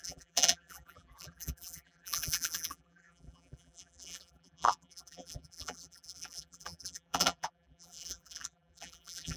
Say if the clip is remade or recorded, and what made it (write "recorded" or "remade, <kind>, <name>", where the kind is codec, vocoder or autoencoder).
remade, vocoder, BigVGAN v2